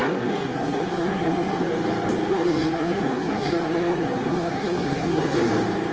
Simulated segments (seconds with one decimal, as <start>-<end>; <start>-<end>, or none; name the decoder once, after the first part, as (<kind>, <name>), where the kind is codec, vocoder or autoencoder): 0.0-1.7 (codec, SNAC); 2.3-5.5